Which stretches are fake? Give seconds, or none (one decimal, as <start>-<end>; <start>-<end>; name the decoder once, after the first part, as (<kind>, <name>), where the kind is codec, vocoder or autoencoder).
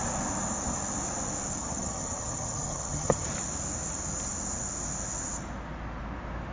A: 1.6-3.3 (vocoder, HiFi-GAN)